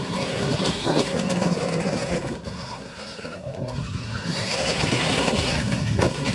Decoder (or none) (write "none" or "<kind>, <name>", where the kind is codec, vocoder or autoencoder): codec, SNAC